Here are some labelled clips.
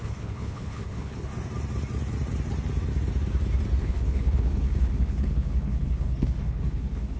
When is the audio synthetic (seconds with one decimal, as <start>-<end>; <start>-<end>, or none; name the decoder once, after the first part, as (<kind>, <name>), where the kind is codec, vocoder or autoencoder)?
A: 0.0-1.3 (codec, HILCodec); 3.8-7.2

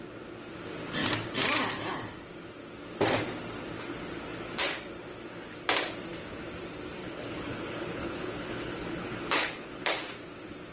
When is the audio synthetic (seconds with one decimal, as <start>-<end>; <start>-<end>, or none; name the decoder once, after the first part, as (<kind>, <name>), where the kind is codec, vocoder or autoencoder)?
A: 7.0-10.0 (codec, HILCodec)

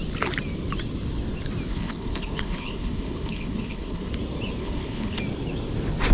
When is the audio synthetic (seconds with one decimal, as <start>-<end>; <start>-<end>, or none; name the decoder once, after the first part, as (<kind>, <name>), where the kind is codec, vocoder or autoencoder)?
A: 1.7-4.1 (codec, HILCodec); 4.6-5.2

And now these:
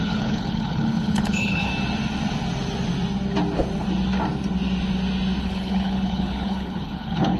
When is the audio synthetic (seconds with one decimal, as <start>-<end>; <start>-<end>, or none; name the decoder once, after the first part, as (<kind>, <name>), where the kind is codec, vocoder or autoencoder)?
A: 0.0-1.7 (codec, HILCodec); 5.4-7.4

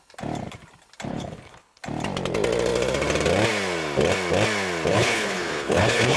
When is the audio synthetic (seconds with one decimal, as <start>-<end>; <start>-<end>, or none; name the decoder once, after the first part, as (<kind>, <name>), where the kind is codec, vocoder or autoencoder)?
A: 1.1-1.8 (codec, HILCodec); 4.9-6.2

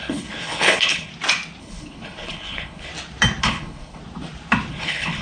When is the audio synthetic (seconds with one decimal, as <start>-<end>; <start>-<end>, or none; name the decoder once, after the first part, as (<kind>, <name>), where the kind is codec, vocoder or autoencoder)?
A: 0.0-1.1 (codec, HILCodec); 1.6-2.9; 3.4-4.0; 4.7-5.2

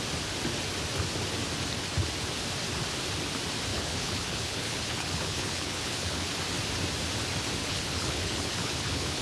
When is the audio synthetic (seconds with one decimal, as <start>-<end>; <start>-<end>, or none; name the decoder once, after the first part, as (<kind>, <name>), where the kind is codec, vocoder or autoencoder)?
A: 3.7-6.3 (codec, HILCodec); 7.6-9.2